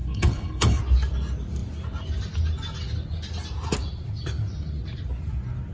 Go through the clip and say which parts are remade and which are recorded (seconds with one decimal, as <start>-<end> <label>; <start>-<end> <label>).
0.0-0.8 remade; 0.8-5.7 recorded